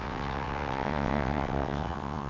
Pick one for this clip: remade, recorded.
remade